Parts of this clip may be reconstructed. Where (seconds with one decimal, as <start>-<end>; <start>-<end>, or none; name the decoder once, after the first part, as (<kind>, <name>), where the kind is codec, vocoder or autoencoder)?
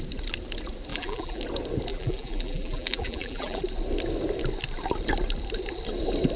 0.9-1.4 (vocoder, BigVGAN v2); 1.9-3.6